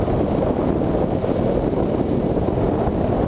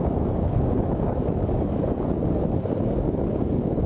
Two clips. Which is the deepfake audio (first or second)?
second